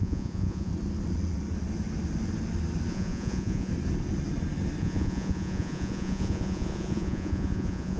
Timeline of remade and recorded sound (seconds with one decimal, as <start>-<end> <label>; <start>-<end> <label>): 0.0-0.7 remade; 0.7-2.9 recorded; 2.9-3.7 remade; 3.7-4.8 recorded; 4.8-8.0 remade